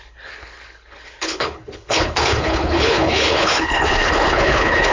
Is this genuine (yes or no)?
no